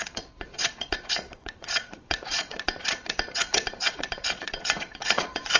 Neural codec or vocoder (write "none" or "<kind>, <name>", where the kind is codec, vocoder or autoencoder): vocoder, Vocos